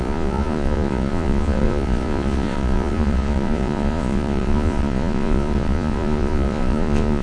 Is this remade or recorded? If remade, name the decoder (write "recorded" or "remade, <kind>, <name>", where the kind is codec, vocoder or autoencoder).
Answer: remade, vocoder, Vocos